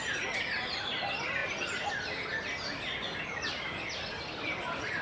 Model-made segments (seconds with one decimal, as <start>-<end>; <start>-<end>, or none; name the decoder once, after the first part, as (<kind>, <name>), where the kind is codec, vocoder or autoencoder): 0.0-5.0 (vocoder, BigVGAN v2)